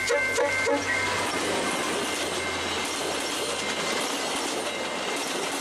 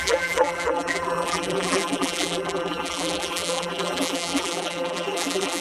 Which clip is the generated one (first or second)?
second